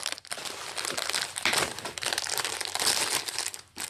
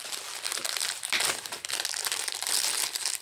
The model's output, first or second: first